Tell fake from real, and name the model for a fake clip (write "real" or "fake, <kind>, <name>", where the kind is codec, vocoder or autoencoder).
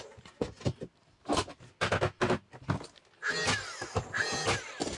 real